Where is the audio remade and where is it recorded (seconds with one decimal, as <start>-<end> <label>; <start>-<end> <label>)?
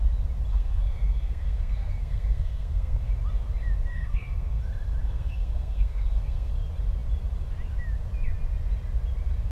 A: 0.0-0.5 recorded; 0.5-3.1 remade; 3.1-3.9 recorded; 3.9-4.6 remade; 4.6-5.0 recorded; 5.0-6.5 remade; 6.5-9.5 recorded